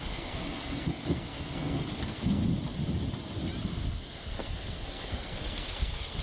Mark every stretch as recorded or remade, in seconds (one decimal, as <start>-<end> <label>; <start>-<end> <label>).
0.0-2.4 remade; 2.4-3.9 recorded; 3.9-6.2 remade